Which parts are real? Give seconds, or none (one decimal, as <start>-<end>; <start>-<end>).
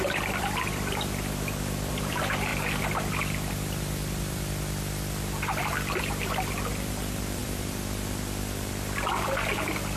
2.5-3.5